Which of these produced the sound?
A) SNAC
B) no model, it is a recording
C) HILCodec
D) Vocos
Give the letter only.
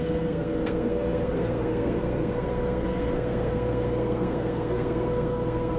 A